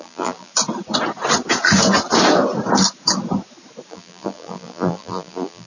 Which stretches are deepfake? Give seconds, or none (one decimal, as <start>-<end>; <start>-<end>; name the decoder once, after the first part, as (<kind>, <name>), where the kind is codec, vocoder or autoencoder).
0.0-0.5 (vocoder, BigVGAN v2); 3.9-5.7